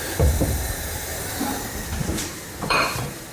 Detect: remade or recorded remade